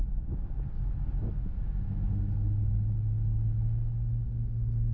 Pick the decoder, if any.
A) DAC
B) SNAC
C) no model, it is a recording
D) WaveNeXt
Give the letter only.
C